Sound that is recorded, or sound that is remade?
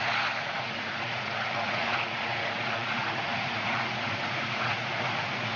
remade